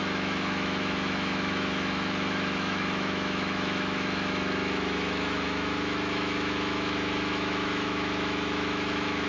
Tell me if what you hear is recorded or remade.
remade